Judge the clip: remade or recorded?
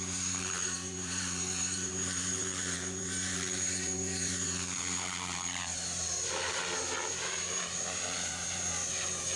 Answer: remade